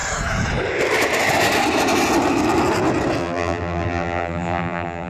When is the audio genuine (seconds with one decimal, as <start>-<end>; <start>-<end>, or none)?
0.0-3.2